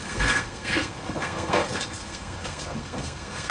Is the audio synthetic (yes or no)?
yes